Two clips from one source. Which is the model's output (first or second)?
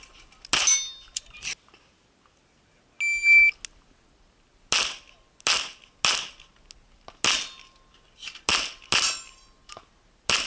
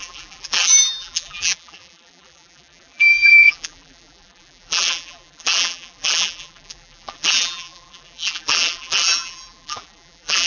second